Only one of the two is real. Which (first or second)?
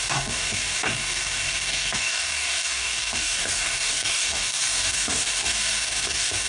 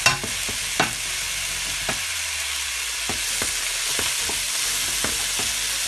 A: second